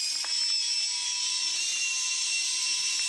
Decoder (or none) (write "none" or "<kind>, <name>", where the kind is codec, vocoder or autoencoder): none